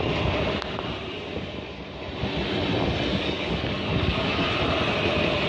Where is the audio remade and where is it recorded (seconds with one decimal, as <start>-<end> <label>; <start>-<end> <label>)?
0.0-3.1 recorded; 3.1-4.5 remade; 4.5-5.5 recorded